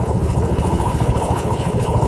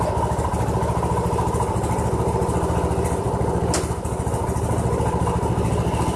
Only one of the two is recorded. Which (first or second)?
second